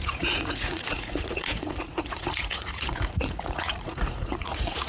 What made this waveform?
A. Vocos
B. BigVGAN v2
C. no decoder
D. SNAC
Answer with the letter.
A